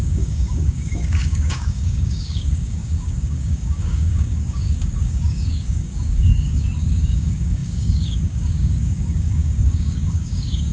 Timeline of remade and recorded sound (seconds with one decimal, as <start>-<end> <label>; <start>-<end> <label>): 0.0-10.7 remade